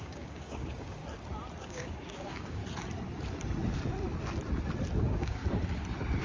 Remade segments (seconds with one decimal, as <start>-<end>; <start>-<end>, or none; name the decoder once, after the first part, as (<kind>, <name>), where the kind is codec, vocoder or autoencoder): 0.0-1.0 (codec, DAC); 1.6-2.6; 5.0-5.4